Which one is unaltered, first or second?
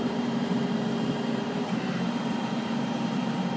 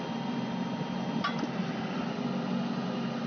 second